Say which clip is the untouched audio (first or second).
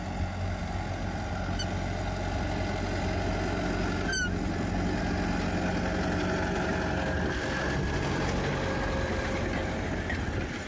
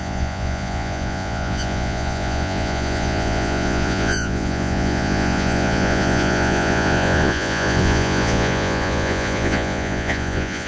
first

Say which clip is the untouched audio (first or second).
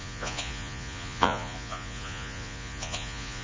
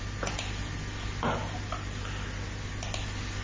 second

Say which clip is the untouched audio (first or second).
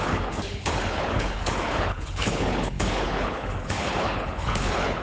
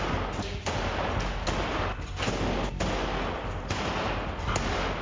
second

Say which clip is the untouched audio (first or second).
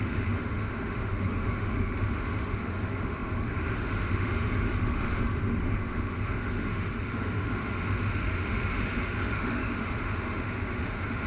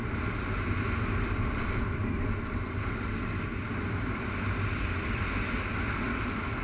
second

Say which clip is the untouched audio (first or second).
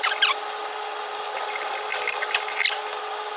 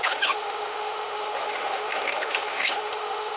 first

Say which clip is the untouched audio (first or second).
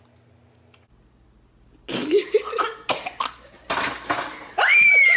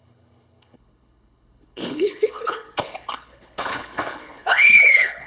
first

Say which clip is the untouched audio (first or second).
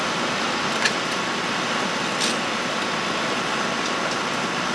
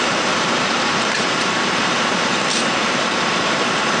first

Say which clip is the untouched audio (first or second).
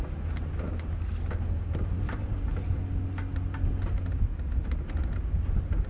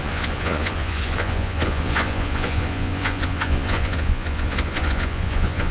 first